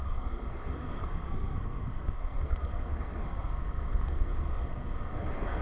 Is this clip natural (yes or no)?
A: no